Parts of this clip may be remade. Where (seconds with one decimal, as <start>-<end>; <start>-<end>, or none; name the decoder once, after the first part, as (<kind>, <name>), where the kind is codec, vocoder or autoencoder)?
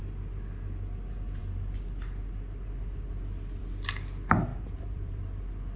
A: 4.5-5.2 (vocoder, BigVGAN v2)